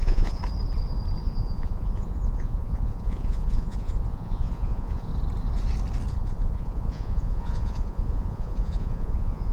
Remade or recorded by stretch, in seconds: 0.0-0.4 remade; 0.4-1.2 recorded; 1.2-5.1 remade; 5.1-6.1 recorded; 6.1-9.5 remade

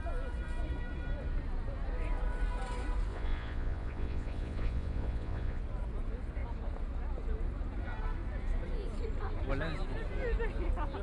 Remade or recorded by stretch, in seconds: 0.0-3.1 recorded; 3.1-5.6 remade; 5.6-11.0 recorded

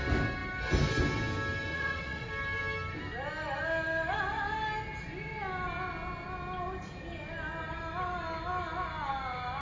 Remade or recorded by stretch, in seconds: 0.0-1.7 recorded; 1.7-2.3 remade; 2.3-9.6 recorded

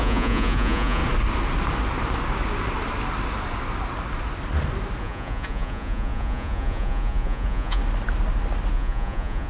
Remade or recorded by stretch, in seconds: 0.0-1.0 remade; 1.0-5.0 recorded; 5.0-7.8 remade; 7.8-8.7 recorded; 8.7-9.5 remade